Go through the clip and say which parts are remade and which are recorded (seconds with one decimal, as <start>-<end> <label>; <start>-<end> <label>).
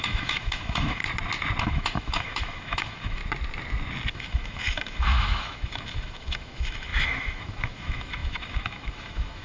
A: 0.0-1.0 remade; 1.0-1.6 recorded; 1.6-3.2 remade; 3.2-4.1 recorded; 4.1-9.4 remade